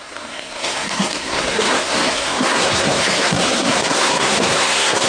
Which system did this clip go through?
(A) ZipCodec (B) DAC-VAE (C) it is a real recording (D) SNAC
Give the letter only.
D